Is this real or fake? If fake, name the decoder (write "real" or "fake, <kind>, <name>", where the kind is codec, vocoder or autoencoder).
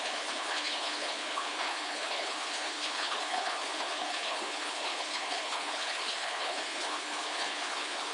fake, codec, HILCodec